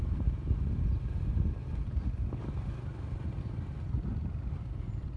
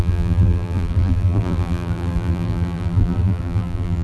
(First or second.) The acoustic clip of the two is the first